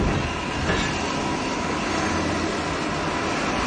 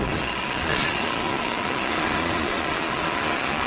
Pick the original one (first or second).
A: first